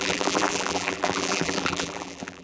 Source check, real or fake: fake